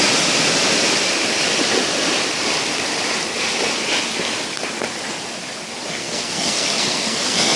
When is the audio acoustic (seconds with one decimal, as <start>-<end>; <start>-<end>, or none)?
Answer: 0.0-5.9